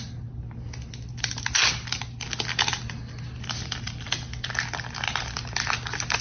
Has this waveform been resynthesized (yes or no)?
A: no